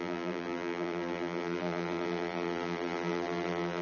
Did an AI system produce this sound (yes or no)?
yes